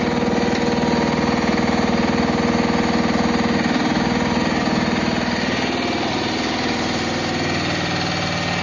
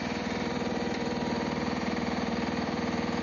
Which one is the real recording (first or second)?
first